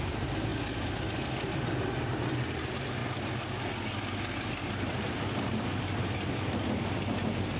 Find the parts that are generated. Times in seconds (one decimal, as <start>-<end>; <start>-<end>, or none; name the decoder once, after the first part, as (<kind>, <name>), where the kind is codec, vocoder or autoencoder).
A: 0.0-0.5 (vocoder, BigVGAN v2); 1.1-3.0